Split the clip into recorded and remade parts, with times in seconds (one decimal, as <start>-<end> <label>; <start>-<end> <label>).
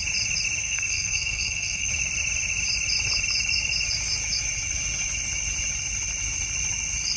0.0-0.6 recorded; 0.6-1.9 remade; 1.9-7.2 recorded